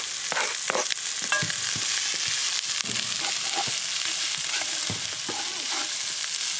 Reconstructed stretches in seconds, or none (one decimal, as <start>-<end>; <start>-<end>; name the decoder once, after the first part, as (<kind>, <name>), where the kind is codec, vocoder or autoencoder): none